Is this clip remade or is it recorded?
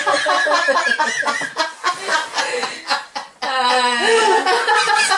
recorded